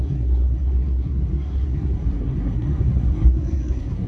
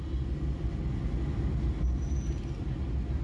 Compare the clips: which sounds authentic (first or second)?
second